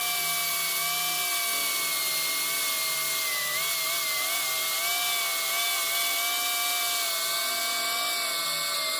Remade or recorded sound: recorded